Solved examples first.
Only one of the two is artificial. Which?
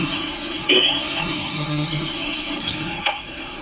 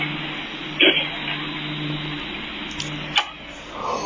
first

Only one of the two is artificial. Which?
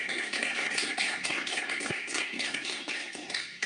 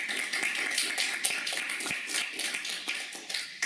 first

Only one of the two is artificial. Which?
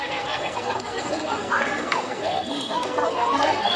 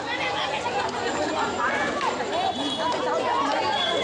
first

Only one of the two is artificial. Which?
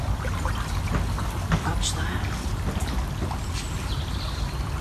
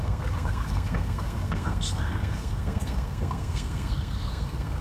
second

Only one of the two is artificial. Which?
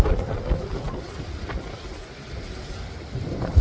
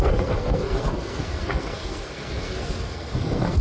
second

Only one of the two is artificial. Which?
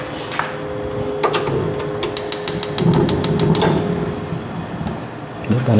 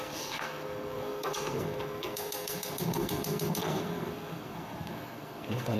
second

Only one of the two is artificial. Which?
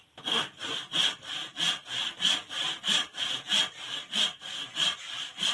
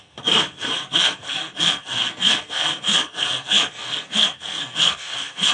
second